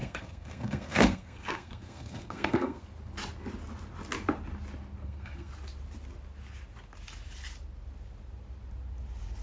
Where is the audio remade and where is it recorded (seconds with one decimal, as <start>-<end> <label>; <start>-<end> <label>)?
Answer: 0.0-2.8 remade; 2.8-5.0 recorded; 5.0-5.5 remade; 5.5-9.4 recorded